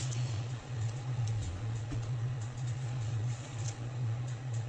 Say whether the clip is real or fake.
fake